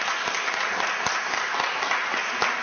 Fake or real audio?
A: real